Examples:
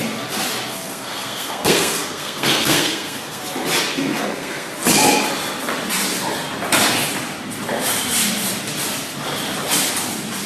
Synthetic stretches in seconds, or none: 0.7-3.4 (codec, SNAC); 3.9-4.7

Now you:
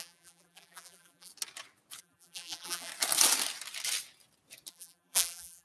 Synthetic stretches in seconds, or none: 0.0-1.3 (vocoder, BigVGAN v2); 2.0-2.9; 4.7-5.6

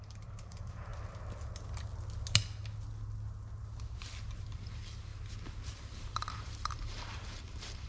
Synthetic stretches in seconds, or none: 0.0-0.9 (vocoder, BigVGAN v2); 4.4-5.1; 6.0-7.9